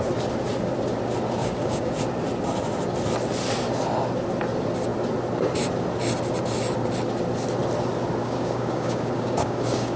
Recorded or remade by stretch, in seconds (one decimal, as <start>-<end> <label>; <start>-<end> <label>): 0.0-1.4 recorded; 1.4-1.9 remade; 1.9-8.2 recorded; 8.2-10.0 remade